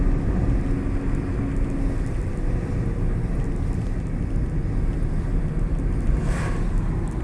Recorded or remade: recorded